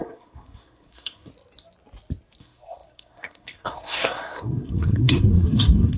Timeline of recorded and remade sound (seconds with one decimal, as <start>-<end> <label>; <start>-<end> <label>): 0.0-1.3 remade; 1.3-2.4 recorded; 2.4-6.0 remade